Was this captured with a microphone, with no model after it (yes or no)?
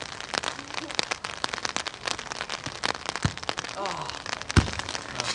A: yes